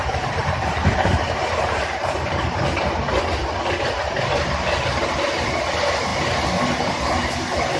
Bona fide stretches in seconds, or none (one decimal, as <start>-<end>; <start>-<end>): 0.0-0.4; 2.8-7.8

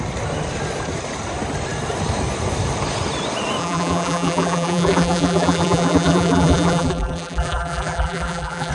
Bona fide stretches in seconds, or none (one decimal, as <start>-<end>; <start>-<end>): 0.0-3.6

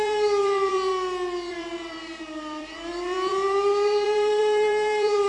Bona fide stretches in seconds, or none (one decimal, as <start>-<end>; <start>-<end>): 0.9-1.5

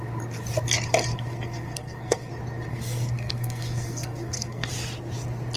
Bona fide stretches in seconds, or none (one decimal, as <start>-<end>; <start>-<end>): 0.0-1.1; 2.3-2.7; 4.7-5.6

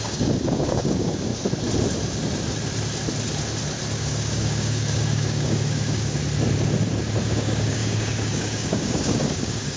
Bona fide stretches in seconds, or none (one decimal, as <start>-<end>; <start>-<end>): 1.3-4.0; 6.2-7.2